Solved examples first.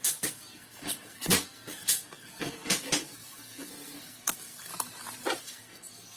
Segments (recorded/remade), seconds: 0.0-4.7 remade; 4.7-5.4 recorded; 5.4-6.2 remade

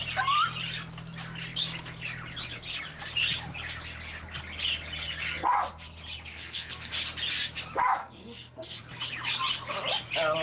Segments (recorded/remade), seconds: 0.0-6.3 recorded; 6.3-6.9 remade; 6.9-8.0 recorded; 8.0-8.8 remade; 8.8-10.4 recorded